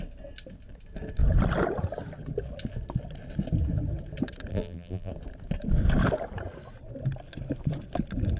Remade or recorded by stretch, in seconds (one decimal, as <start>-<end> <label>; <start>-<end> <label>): 0.0-4.5 recorded; 4.5-5.1 remade; 5.1-8.4 recorded